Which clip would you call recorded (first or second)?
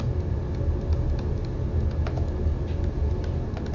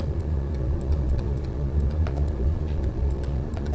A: first